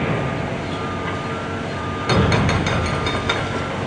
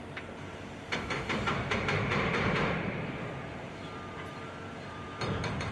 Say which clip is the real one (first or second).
first